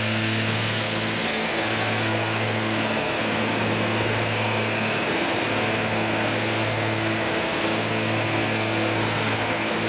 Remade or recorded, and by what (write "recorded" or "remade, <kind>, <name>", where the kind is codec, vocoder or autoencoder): remade, codec, SNAC